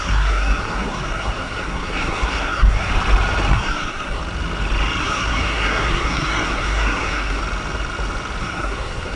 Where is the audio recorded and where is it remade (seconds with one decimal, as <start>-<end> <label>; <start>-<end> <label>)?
0.0-2.9 remade; 2.9-3.5 recorded; 3.5-4.2 remade; 4.2-5.0 recorded; 5.0-7.4 remade; 7.4-8.4 recorded; 8.4-9.2 remade